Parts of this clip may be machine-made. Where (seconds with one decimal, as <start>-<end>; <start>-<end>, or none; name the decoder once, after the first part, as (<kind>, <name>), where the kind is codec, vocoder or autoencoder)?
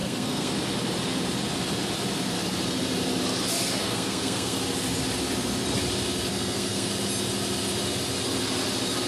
0.0-0.5 (codec, SNAC); 3.8-4.6; 6.3-6.9